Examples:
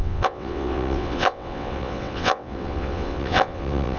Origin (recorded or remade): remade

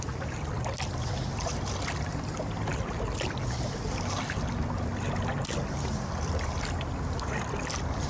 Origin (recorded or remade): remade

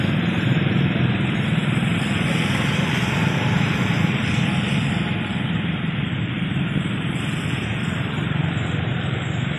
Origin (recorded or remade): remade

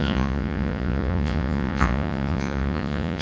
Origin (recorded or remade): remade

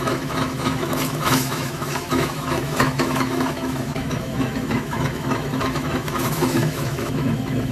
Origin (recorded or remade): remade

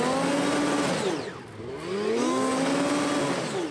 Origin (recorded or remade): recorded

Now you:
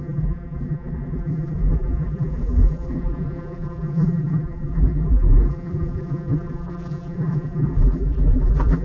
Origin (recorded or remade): remade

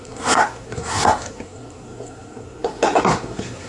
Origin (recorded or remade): remade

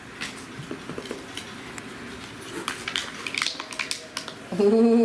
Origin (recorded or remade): recorded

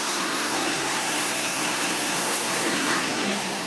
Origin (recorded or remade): remade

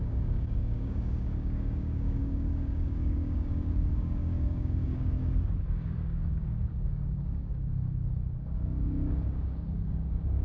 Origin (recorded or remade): remade